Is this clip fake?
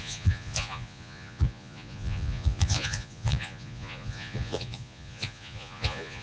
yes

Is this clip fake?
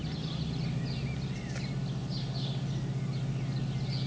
no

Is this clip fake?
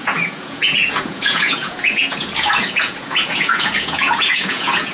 yes